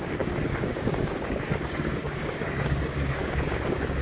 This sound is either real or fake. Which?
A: fake